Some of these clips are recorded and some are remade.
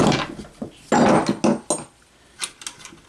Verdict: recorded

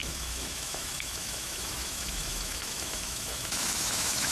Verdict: remade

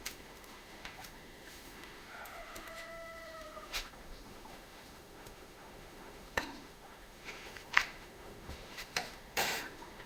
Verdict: remade